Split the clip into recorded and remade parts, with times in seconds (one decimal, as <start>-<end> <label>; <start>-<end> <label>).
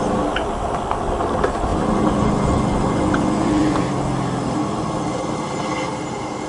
0.0-1.7 recorded; 1.7-3.9 remade; 3.9-4.6 recorded; 4.6-5.3 remade; 5.3-6.5 recorded